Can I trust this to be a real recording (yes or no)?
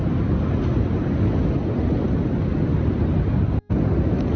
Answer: yes